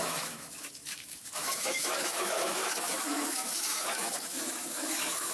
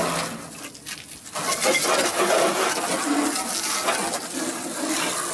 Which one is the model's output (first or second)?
first